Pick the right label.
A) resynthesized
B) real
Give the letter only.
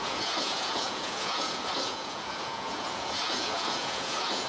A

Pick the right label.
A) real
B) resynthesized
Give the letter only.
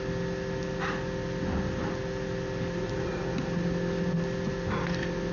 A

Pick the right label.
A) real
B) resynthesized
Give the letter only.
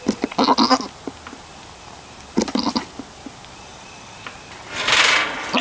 A